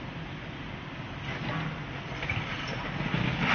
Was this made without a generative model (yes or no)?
yes